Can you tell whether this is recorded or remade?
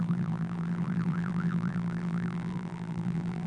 remade